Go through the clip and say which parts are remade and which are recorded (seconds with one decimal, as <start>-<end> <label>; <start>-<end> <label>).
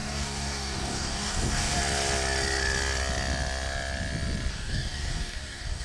0.0-1.8 remade; 1.8-4.5 recorded; 4.5-5.8 remade